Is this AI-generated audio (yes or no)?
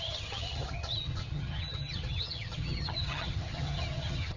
yes